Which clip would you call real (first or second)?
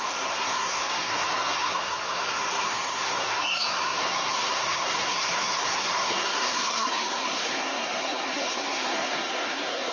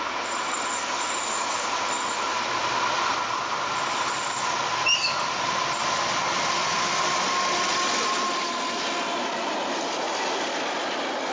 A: second